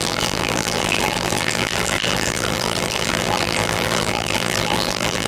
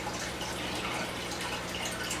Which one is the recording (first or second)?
second